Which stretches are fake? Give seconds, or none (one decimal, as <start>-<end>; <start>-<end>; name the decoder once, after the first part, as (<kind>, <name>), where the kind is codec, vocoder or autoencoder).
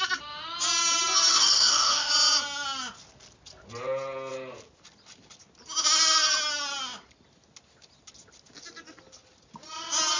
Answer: 1.3-2.1 (codec, DAC)